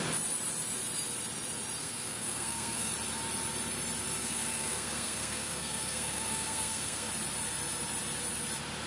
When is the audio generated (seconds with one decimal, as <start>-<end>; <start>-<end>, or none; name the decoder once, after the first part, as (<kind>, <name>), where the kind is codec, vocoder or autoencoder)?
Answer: 1.8-2.9 (codec, SNAC); 4.2-7.1